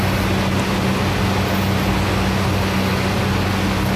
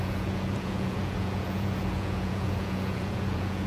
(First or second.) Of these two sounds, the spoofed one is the second